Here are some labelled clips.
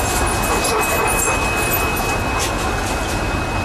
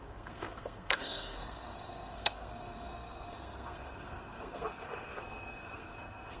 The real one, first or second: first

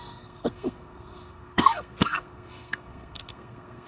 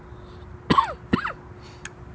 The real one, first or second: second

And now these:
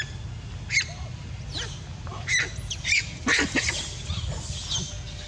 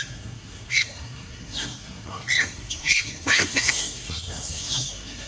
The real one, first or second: first